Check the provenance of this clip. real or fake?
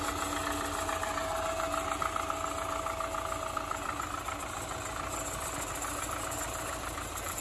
real